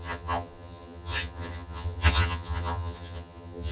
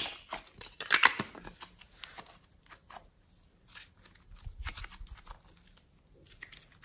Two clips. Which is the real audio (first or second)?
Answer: second